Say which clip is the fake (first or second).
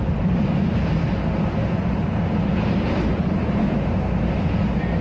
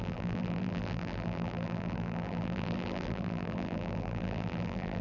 second